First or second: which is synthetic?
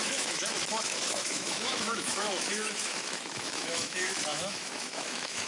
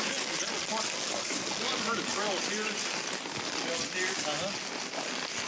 first